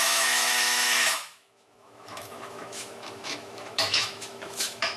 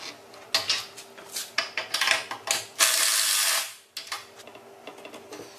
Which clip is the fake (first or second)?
first